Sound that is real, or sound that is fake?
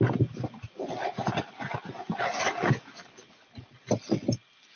real